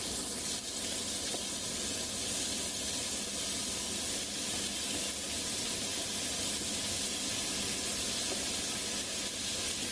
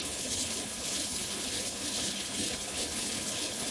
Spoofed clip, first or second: second